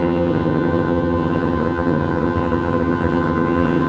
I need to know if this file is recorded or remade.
remade